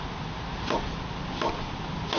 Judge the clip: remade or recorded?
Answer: recorded